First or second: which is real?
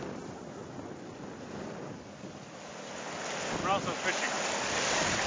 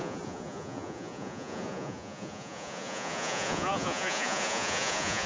first